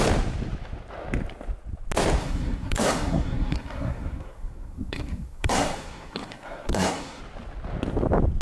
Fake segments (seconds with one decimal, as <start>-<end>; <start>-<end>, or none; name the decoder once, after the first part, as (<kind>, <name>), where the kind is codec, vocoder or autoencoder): 2.2-7.2 (codec, SNAC)